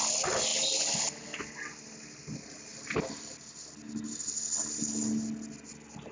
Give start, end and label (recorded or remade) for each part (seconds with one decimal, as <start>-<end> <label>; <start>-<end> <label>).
0.0-6.1 recorded